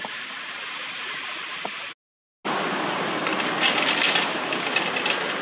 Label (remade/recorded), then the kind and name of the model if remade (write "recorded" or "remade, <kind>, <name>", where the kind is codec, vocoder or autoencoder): recorded